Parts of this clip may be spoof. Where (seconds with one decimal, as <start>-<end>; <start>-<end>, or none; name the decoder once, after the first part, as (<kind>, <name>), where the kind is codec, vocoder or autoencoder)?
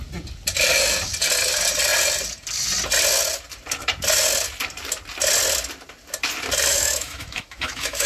6.7-8.1 (autoencoder, DAC-VAE)